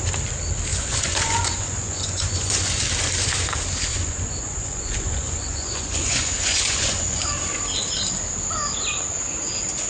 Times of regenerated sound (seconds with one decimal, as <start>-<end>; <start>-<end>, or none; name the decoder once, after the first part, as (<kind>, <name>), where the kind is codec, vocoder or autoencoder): 0.7-2.8 (vocoder, Vocos); 3.9-7.2